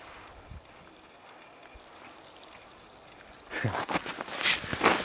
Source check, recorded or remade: recorded